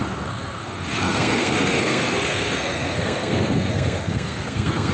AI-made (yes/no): yes